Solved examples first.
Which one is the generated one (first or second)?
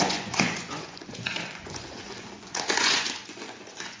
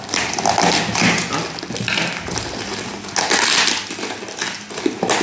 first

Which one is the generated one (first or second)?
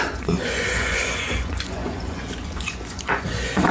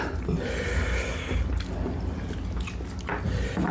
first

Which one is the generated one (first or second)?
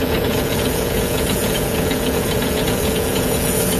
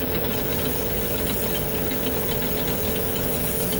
first